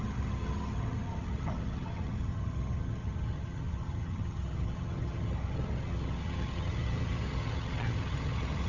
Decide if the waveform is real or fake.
fake